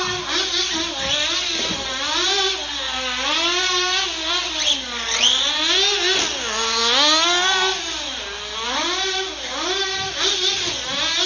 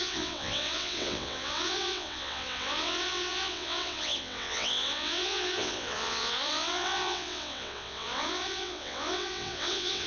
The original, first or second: first